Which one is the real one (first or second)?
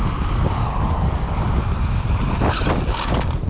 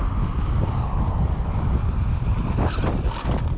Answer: first